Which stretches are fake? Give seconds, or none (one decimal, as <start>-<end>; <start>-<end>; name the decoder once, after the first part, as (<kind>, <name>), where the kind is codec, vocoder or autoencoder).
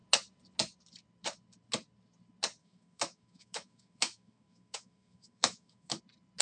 2.6-6.0 (autoencoder, DAC-VAE)